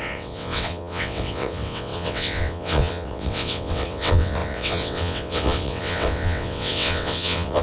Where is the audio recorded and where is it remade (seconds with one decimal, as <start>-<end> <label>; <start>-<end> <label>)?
0.0-7.6 remade